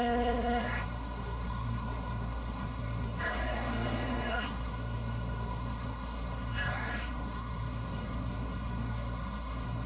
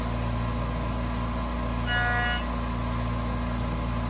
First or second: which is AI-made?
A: first